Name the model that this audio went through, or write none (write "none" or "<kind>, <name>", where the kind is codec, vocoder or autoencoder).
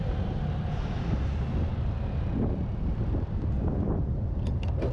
vocoder, BigVGAN v2